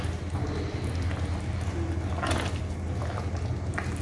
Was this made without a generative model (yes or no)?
yes